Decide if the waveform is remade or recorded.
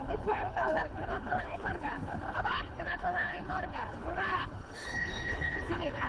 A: remade